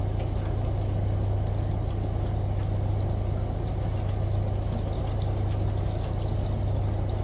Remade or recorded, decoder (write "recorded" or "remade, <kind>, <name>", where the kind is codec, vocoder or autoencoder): recorded